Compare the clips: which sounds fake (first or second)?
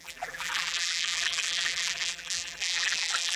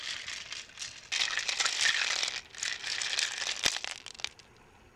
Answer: first